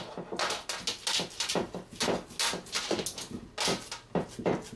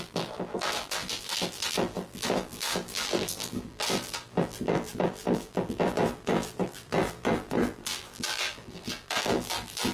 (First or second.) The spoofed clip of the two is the second